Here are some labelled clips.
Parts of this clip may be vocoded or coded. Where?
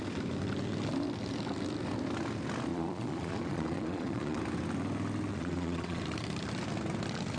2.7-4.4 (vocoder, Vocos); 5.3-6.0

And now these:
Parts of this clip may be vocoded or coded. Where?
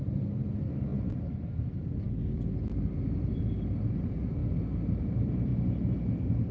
0.0-0.9 (vocoder, BigVGAN v2); 2.6-4.4; 5.0-5.5; 6.1-6.5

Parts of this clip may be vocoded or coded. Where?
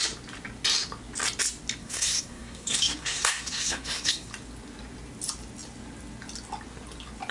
1.8-4.3 (codec, SNAC)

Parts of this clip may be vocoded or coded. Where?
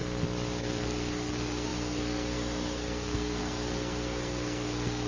0.6-5.1 (codec, SNAC)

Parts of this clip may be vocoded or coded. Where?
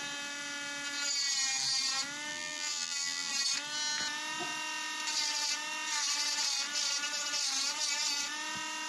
2.3-3.3 (vocoder, BigVGAN v2)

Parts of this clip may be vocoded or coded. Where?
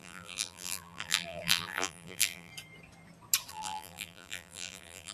0.0-2.5 (vocoder, BigVGAN v2); 3.5-5.1